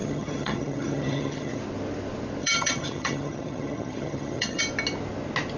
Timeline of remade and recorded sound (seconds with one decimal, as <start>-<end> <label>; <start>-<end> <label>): 0.0-1.6 remade; 1.6-2.4 recorded; 2.4-4.6 remade; 4.6-5.6 recorded